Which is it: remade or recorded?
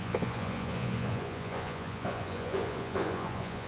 remade